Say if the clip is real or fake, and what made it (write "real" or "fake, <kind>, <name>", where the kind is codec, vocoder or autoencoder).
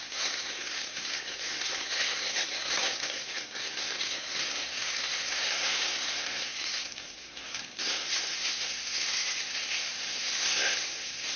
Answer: fake, codec, SNAC